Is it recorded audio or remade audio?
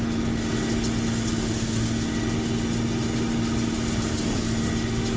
recorded